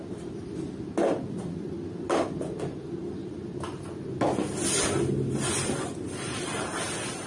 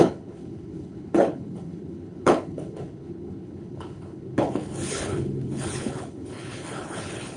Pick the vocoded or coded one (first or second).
second